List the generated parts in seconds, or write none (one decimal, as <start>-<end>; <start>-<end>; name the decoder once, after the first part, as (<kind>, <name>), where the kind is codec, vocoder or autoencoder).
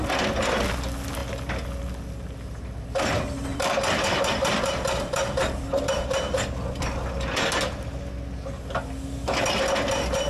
3.5-5.9 (vocoder, BigVGAN v2)